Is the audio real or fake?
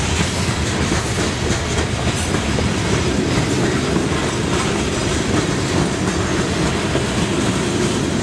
real